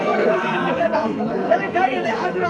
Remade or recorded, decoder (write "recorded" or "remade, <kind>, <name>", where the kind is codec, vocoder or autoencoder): remade, codec, SNAC